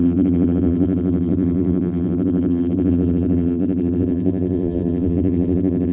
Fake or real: fake